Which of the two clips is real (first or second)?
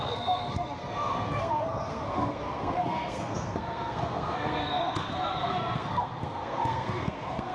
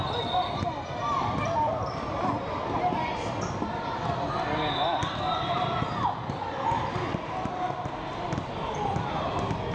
second